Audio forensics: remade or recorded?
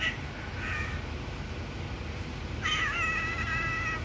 recorded